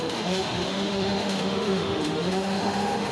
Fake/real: fake